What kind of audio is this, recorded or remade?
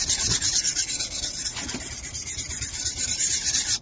recorded